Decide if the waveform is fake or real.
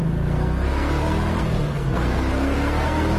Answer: fake